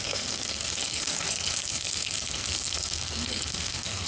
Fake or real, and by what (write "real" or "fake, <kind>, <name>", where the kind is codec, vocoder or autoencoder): fake, codec, SNAC